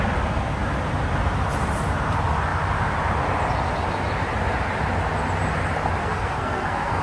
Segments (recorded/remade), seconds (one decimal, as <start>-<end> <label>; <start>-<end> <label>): 0.0-6.0 recorded; 6.0-7.0 remade